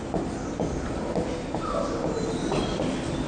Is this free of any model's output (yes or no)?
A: yes